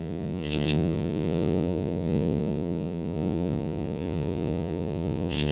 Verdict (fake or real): fake